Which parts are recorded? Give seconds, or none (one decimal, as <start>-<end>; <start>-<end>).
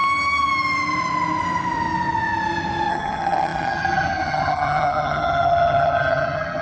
0.0-2.9